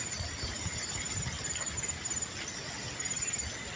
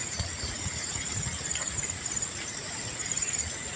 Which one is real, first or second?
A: first